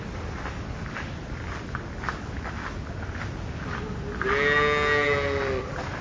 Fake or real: real